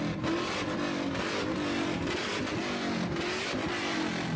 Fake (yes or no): no